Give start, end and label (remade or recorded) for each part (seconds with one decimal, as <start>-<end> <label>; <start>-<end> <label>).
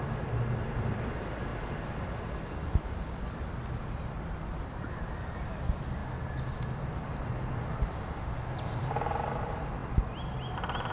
0.0-1.5 remade; 1.5-2.4 recorded; 2.4-6.0 remade; 6.0-8.1 recorded; 8.1-9.8 remade; 9.8-10.5 recorded; 10.5-10.9 remade